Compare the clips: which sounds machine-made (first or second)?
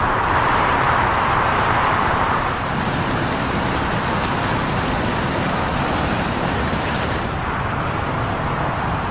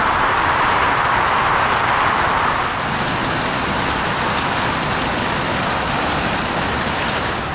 first